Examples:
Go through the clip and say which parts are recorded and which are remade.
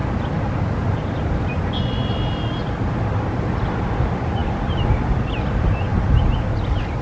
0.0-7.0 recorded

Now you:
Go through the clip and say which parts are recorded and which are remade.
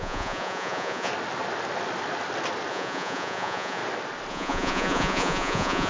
0.0-1.1 remade; 1.1-2.7 recorded; 2.7-3.8 remade; 3.8-4.3 recorded; 4.3-5.9 remade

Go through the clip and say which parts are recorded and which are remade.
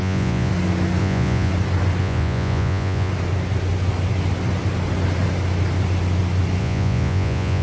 0.0-0.5 remade; 0.5-1.0 recorded; 1.0-1.5 remade; 1.5-2.0 recorded; 2.0-3.1 remade; 3.1-6.6 recorded; 6.6-7.6 remade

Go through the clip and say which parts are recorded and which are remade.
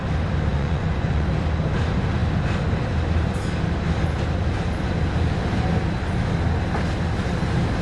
0.0-0.5 recorded; 0.5-1.3 remade; 1.3-7.8 recorded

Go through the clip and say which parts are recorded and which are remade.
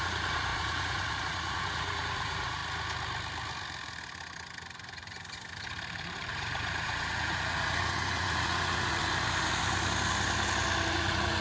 0.0-2.6 remade; 2.6-6.3 recorded; 6.3-9.0 remade; 9.0-10.9 recorded; 10.9-11.4 remade